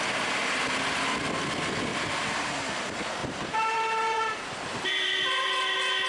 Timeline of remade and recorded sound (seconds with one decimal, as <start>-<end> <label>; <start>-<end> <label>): 0.0-1.9 recorded; 1.9-2.7 remade; 2.7-3.2 recorded; 3.2-5.2 remade; 5.2-6.1 recorded